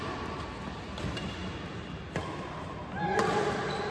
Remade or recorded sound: recorded